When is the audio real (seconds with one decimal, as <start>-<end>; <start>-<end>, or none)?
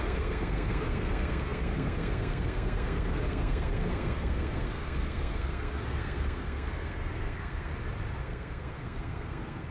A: 7.7-8.2